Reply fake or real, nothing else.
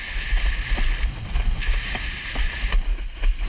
real